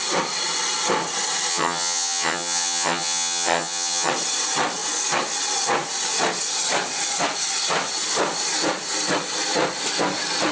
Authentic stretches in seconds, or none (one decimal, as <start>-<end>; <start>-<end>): 0.0-1.5; 4.1-10.5

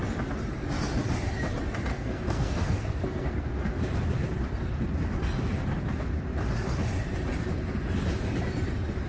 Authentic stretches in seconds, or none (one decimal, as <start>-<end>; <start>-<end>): 0.0-1.9; 3.8-9.1

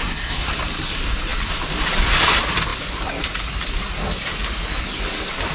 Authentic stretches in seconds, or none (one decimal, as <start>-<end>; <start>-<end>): 0.5-5.5

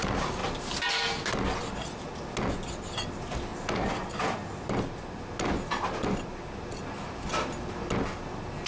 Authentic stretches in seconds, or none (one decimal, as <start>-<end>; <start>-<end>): 0.0-8.7

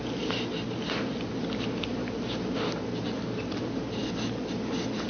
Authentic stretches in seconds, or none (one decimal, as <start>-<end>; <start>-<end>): 0.0-5.1

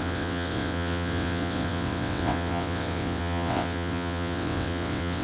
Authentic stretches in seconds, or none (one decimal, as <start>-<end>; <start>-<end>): none

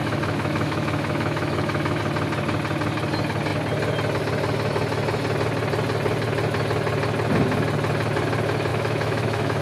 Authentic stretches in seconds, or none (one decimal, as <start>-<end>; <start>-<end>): 2.0-8.7

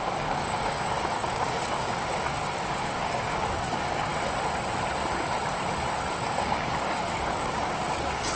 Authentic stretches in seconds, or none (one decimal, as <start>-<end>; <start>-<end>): 4.1-6.3